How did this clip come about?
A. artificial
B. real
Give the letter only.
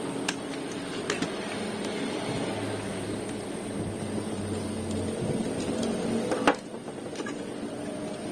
B